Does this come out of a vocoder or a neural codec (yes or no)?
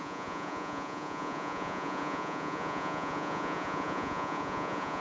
yes